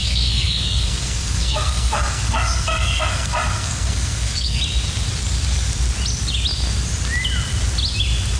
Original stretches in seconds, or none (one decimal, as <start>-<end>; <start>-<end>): 4.6-8.4